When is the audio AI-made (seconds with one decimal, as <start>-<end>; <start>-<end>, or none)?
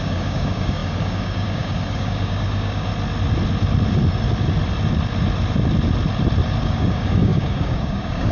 0.0-2.9; 6.6-8.3